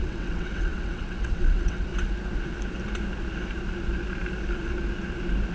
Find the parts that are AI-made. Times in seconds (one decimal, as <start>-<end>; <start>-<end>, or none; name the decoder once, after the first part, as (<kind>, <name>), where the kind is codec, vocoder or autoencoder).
0.0-1.9 (vocoder, WaveNeXt)